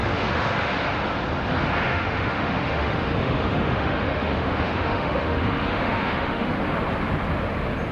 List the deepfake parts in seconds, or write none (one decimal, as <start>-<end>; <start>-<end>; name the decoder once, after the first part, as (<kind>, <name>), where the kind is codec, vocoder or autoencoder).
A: 0.0-0.7 (autoencoder, DAC-VAE); 1.9-6.6